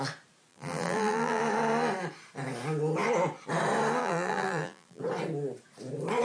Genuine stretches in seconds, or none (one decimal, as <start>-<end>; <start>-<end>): 0.0-0.5; 1.4-4.0; 5.0-6.2

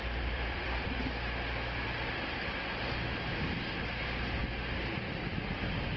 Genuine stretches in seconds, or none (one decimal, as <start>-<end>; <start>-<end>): 4.4-5.1

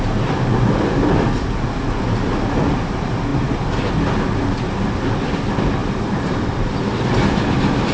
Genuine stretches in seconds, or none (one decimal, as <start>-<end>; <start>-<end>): 0.0-5.8; 6.6-7.9

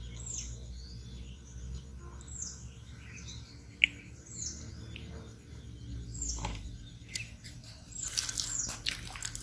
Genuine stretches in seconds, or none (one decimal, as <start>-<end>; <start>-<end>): 0.0-9.4

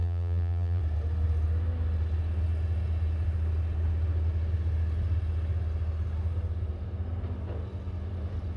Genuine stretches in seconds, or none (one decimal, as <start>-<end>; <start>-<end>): 0.8-8.6

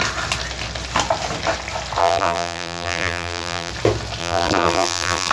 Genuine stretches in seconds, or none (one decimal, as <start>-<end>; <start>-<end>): 0.0-2.0; 3.7-4.2

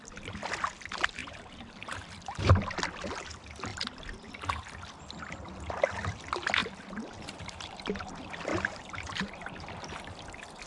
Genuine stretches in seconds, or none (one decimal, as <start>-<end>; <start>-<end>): 0.0-1.2; 1.8-6.6; 8.1-8.5; 9.7-10.7

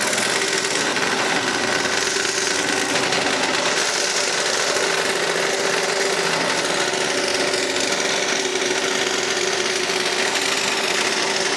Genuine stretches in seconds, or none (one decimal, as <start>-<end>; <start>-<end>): 0.0-0.9; 1.5-11.6